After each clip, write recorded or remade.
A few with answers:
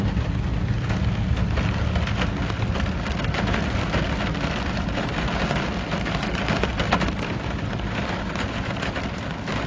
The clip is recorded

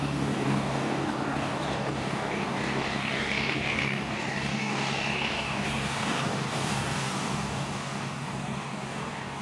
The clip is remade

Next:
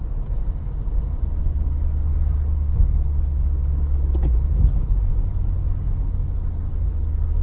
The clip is recorded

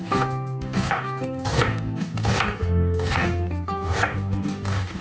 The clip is remade